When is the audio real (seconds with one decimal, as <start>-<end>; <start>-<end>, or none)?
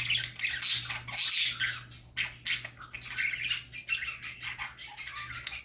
0.0-5.6